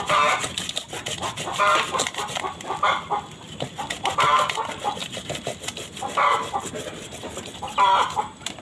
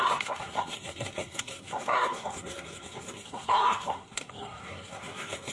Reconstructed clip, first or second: second